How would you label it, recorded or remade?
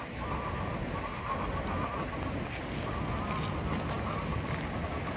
recorded